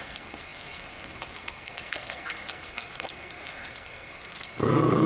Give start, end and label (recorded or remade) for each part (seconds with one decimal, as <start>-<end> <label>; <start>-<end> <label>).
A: 0.0-5.1 remade